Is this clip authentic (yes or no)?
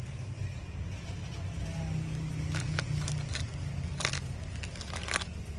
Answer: yes